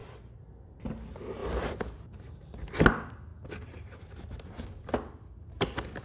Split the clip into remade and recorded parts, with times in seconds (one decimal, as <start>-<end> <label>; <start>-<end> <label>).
0.0-6.0 recorded